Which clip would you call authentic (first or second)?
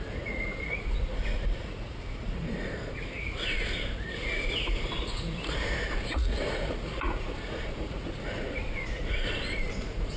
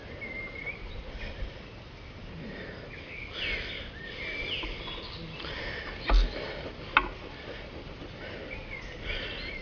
second